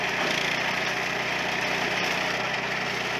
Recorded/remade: recorded